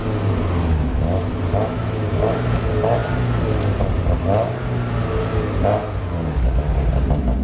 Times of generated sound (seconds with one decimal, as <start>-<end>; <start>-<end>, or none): none